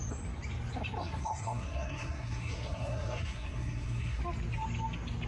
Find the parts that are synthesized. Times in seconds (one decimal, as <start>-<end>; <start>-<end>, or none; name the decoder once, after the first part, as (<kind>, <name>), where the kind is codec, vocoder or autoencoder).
1.0-4.2 (codec, SNAC)